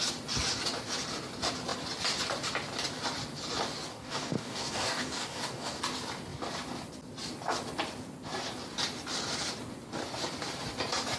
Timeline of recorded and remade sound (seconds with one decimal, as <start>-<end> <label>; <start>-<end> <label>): 0.0-3.9 recorded; 3.9-5.8 remade; 5.8-11.2 recorded